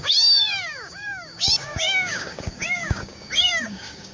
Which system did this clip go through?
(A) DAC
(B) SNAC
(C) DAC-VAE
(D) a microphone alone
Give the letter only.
A